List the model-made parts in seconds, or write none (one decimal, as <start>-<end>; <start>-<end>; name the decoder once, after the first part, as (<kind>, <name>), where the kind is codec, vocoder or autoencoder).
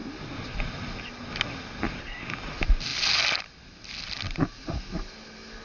none